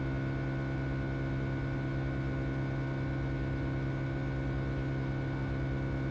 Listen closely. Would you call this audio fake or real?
real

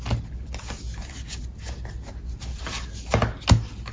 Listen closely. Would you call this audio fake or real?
real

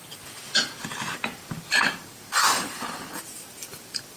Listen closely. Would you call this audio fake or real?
fake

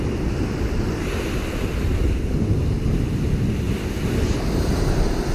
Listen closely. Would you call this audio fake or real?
real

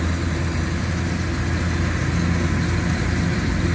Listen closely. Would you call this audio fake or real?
real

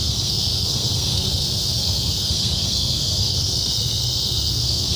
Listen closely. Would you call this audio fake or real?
fake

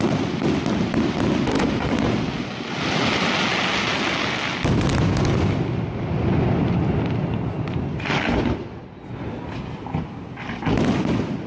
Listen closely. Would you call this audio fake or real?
real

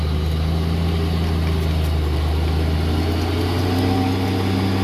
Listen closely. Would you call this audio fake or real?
real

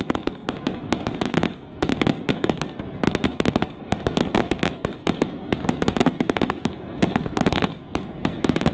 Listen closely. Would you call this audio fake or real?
fake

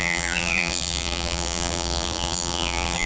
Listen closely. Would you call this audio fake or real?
fake